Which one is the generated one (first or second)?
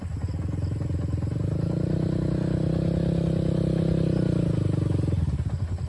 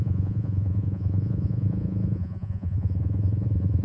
second